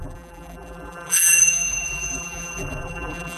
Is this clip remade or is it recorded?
remade